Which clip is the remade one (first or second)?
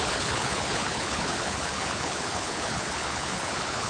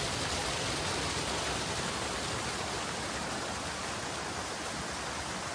first